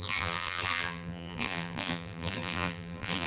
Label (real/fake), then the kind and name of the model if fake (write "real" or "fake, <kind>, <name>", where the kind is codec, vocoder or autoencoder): fake, vocoder, BigVGAN v2